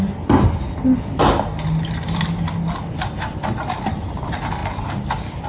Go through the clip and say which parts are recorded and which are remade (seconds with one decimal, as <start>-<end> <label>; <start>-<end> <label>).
0.0-5.5 recorded